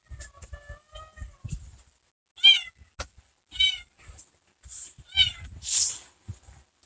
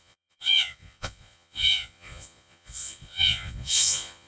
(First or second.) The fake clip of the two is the second